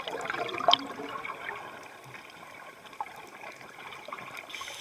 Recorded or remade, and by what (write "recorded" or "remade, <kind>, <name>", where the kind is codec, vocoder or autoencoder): recorded